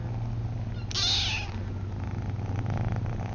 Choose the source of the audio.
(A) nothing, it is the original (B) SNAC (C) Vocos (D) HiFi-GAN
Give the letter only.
A